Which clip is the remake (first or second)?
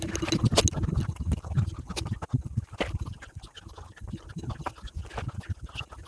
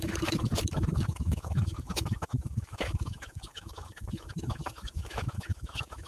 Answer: second